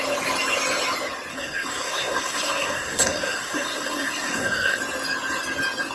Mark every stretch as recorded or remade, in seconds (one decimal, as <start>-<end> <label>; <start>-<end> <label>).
0.0-1.3 recorded; 1.3-4.8 remade; 4.8-5.9 recorded